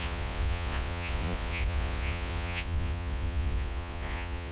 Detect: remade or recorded remade